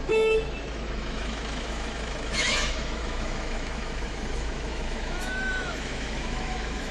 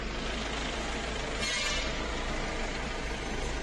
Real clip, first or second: second